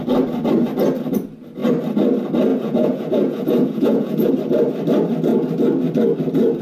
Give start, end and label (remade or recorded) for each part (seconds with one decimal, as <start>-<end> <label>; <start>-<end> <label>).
0.0-2.5 recorded; 2.5-4.3 remade; 4.3-6.6 recorded